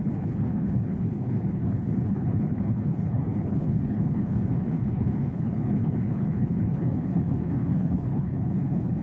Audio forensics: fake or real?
fake